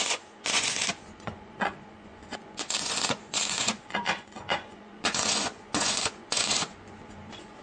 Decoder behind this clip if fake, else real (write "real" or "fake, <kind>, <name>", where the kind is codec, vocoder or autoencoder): fake, vocoder, Vocos